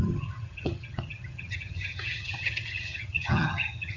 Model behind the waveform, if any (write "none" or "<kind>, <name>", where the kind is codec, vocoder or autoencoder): vocoder, HiFi-GAN